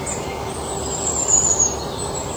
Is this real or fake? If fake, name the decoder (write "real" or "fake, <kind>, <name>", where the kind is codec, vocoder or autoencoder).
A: fake, vocoder, BigVGAN v2